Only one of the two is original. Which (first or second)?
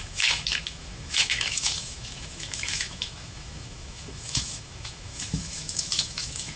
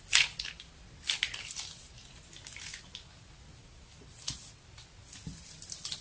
second